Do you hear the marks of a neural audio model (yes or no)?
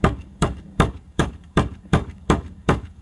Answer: yes